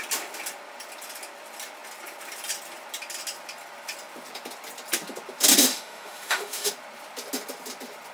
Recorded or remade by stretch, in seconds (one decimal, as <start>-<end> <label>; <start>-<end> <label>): 0.0-5.6 recorded; 5.6-6.7 remade; 6.7-8.1 recorded